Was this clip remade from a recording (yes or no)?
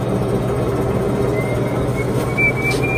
no